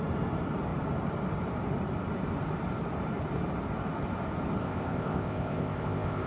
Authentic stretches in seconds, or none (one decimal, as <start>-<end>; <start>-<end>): 0.0-4.6

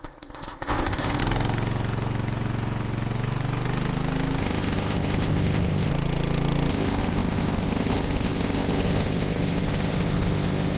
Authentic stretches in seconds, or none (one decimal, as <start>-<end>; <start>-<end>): 1.2-4.4; 5.9-6.7

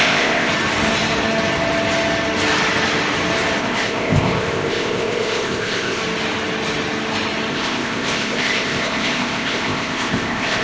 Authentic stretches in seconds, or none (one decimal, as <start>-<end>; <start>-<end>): 0.5-3.6; 6.0-7.5